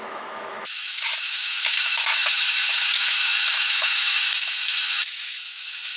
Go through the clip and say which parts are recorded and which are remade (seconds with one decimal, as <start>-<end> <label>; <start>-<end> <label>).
0.0-6.0 remade